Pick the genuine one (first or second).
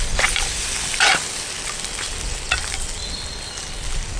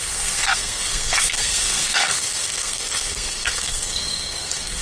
first